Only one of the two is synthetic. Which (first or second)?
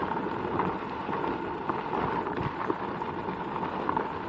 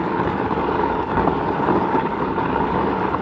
second